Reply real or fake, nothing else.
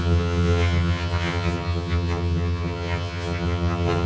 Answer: fake